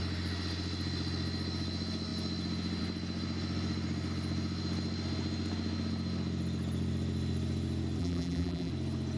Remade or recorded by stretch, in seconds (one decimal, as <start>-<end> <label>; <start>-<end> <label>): 0.0-8.0 recorded; 8.0-8.7 remade; 8.7-9.2 recorded